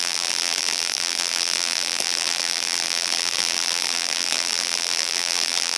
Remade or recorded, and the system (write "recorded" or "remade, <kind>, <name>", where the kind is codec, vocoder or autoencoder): remade, vocoder, BigVGAN v2